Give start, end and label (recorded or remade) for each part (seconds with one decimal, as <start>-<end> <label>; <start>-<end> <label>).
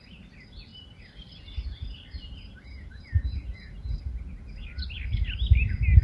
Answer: 0.0-6.0 recorded